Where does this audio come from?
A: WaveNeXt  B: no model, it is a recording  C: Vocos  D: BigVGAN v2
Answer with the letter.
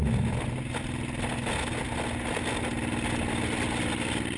B